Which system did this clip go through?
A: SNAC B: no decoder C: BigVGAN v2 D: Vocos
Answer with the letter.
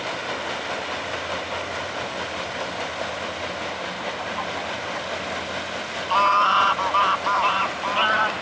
B